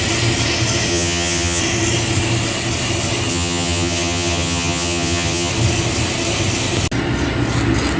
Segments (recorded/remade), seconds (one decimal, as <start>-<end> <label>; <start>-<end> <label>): 0.0-0.9 recorded; 0.9-1.6 remade; 1.6-3.3 recorded; 3.3-5.5 remade; 5.5-8.0 recorded